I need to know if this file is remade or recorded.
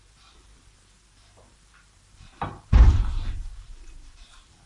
remade